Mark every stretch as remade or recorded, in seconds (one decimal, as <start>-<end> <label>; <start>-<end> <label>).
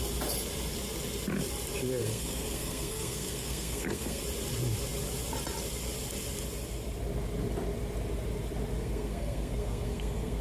0.0-2.0 recorded; 2.0-4.2 remade; 4.2-8.8 recorded; 8.8-10.4 remade